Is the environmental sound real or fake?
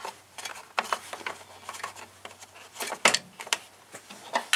real